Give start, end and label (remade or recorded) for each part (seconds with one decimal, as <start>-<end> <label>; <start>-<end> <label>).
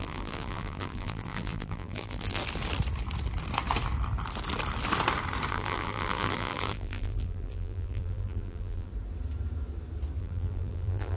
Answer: 0.0-2.4 remade; 2.4-5.5 recorded; 5.5-8.9 remade; 8.9-10.2 recorded; 10.2-11.2 remade